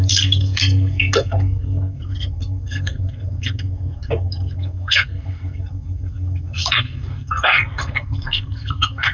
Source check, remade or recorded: remade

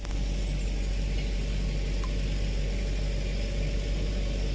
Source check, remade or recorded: recorded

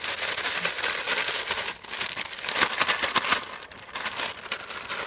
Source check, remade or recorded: recorded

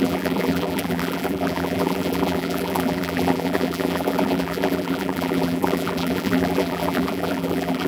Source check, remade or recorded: remade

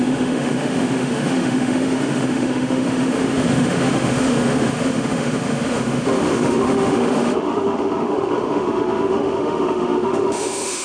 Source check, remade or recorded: remade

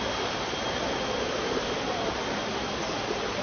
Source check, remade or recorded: recorded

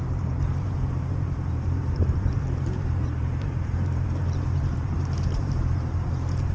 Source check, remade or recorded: remade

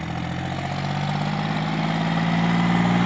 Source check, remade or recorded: recorded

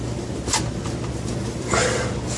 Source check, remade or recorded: recorded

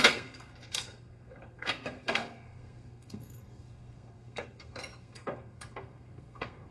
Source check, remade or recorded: remade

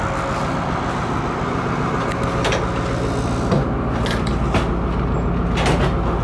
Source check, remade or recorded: recorded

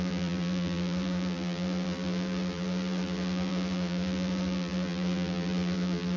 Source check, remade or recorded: remade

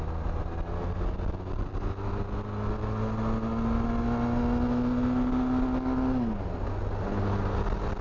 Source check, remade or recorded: recorded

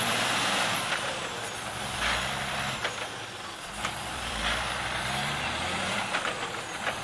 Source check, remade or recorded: remade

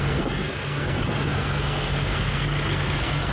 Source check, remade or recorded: remade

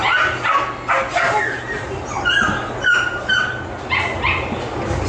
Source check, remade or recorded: recorded